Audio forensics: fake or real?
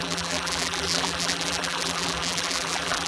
fake